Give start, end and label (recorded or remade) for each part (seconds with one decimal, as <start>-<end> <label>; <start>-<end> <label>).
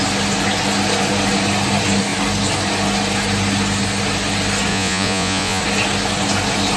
0.0-4.7 recorded; 4.7-5.6 remade; 5.6-6.8 recorded